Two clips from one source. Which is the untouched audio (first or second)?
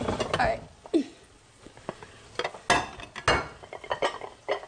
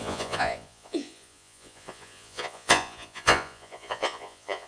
first